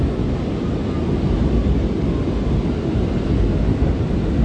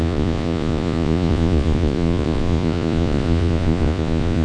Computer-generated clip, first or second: second